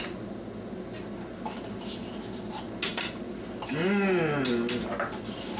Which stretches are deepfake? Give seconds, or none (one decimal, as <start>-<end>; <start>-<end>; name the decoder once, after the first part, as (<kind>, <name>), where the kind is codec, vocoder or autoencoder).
none